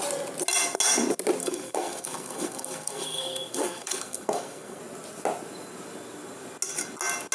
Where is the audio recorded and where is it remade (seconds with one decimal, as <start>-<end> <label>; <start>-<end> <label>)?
0.0-1.4 recorded; 1.4-4.8 remade; 4.8-7.3 recorded